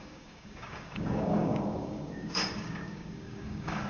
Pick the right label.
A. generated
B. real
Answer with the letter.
A